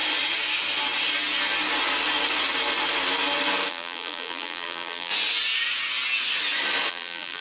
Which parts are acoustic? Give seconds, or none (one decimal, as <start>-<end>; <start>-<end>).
0.0-3.7; 5.1-6.9